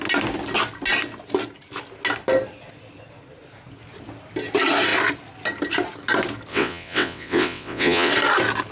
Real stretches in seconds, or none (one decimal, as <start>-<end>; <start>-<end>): 0.0-6.5; 8.1-8.7